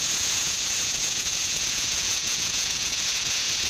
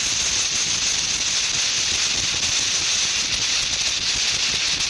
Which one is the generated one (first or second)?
first